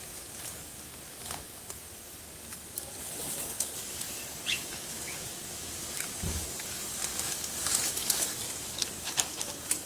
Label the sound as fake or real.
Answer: fake